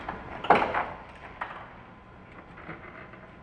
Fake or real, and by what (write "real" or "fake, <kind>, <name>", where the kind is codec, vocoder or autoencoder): real